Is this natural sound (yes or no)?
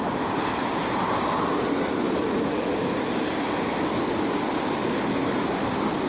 yes